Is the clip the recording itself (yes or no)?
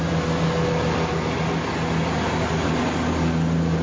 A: yes